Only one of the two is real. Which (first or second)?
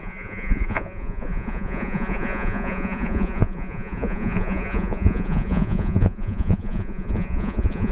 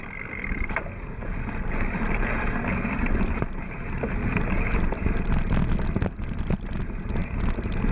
second